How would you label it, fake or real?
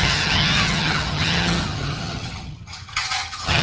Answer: fake